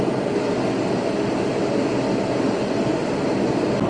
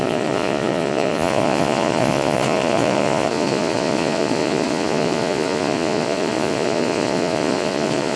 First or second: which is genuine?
first